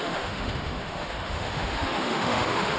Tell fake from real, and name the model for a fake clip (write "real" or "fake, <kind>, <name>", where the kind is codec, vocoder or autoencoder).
fake, autoencoder, DAC-VAE